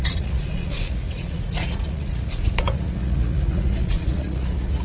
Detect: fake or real fake